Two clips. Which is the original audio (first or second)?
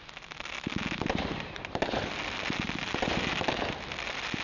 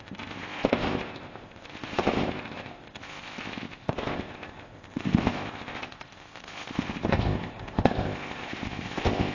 first